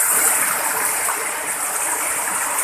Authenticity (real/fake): real